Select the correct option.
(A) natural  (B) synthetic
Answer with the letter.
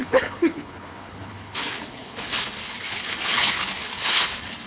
B